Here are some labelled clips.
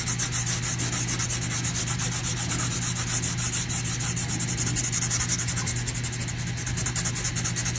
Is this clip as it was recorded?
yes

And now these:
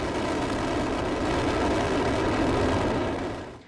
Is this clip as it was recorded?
yes